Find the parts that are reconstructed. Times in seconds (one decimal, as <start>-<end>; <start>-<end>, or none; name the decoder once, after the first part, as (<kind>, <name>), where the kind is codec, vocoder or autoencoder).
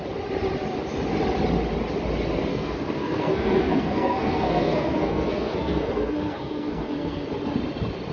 2.5-7.3 (codec, SNAC)